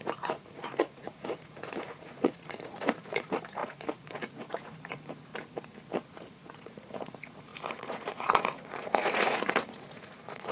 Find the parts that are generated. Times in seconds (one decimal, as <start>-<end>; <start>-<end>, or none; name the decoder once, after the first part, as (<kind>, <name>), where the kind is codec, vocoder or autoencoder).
0.0-5.3 (vocoder, Vocos); 5.9-10.5